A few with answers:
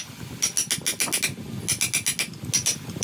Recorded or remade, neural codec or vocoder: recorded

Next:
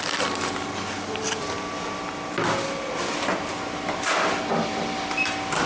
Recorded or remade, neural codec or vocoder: recorded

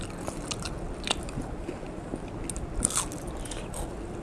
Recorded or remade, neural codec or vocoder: recorded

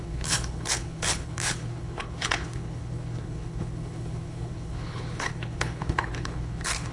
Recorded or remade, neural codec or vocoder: remade, codec, HILCodec